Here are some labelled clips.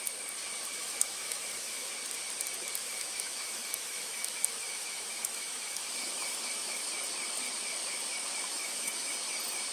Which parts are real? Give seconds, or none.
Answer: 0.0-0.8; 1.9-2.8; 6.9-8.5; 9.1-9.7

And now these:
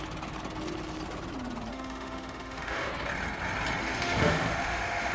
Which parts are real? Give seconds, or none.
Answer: 0.0-1.7; 2.9-3.8

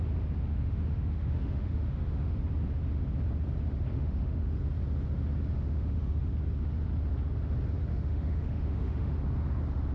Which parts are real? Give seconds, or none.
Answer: 0.0-0.5; 2.4-3.9; 4.6-5.5; 6.3-7.9; 9.1-9.9

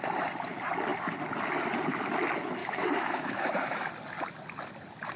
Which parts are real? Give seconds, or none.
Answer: 0.0-2.6; 3.9-5.2